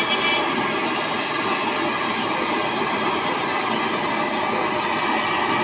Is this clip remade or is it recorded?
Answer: recorded